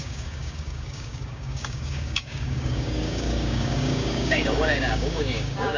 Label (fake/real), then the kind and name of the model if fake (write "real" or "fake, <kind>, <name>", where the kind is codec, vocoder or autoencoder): fake, codec, DAC